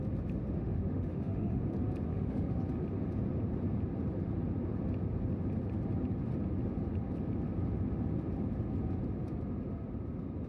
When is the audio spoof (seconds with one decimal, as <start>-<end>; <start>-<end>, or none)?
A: 0.6-1.6; 2.1-2.6